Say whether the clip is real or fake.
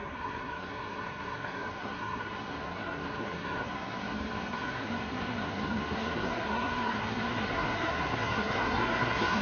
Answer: fake